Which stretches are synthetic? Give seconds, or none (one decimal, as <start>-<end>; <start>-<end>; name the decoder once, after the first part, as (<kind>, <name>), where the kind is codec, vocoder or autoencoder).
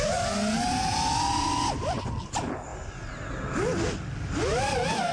none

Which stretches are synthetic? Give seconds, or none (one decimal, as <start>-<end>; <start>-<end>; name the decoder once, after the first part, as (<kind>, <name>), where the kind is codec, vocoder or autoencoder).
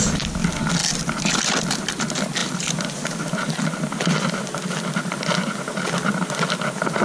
none